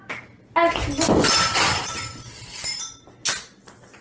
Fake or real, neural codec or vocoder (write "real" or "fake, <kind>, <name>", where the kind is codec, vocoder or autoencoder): real